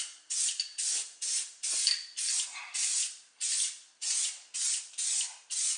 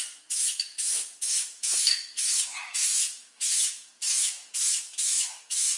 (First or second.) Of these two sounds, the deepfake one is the second